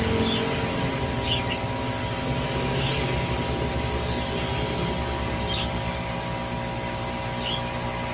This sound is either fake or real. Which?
real